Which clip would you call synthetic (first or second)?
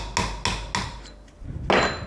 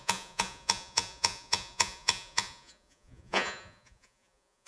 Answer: second